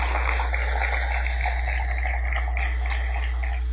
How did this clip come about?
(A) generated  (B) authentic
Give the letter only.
B